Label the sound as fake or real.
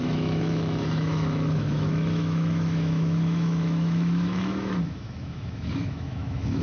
fake